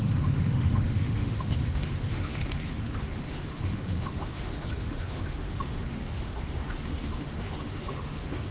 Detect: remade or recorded remade